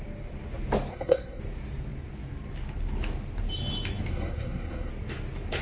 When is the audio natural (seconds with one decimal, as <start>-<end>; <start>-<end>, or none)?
0.0-0.9; 1.4-4.1; 4.9-5.6